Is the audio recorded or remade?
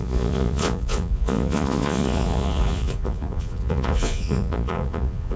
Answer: remade